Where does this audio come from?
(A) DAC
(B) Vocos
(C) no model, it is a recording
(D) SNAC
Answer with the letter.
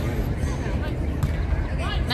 C